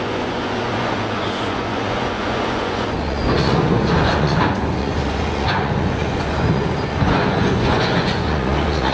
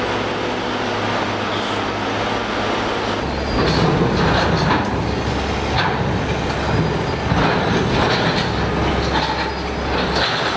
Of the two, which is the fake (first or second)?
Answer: first